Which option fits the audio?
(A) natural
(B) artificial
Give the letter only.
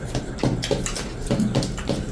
B